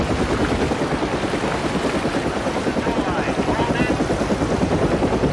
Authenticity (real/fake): real